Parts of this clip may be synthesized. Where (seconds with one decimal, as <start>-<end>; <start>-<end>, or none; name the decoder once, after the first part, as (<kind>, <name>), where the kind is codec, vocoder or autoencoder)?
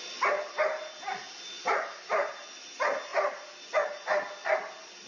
none